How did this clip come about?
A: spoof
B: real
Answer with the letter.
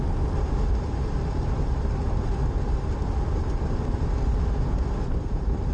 B